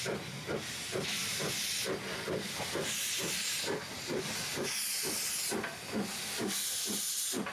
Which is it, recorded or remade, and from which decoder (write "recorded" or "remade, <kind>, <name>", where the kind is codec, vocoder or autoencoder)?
recorded